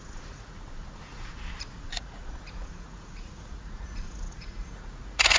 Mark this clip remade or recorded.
remade